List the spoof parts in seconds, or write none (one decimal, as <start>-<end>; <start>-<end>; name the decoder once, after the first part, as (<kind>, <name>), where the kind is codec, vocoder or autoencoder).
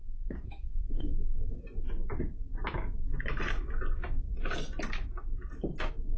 0.0-1.6 (codec, SNAC)